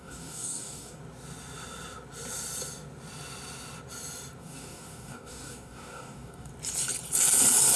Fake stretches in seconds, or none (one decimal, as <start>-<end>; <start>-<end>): 0.0-1.0; 4.4-6.5